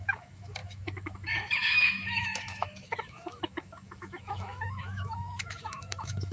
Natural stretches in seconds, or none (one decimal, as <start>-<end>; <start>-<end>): none